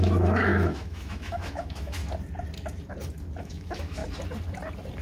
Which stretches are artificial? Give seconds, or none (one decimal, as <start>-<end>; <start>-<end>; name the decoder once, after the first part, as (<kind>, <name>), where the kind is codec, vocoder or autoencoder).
0.0-2.0 (autoencoder, DAC-VAE); 3.4-4.0